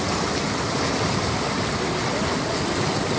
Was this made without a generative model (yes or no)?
yes